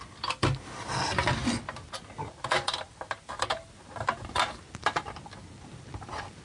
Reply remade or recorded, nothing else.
remade